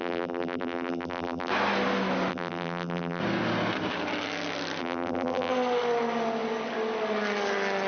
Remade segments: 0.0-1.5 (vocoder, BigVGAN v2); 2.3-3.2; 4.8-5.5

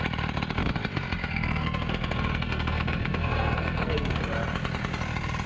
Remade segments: 1.2-4.2 (codec, SNAC)

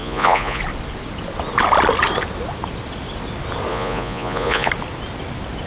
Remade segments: 0.0-0.6 (vocoder, Vocos); 3.7-4.7

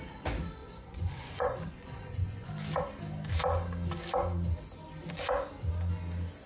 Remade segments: 0.6-2.5 (vocoder, Vocos)

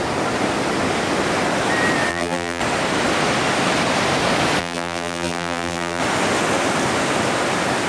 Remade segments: 2.1-2.6 (vocoder, BigVGAN v2); 4.6-6.0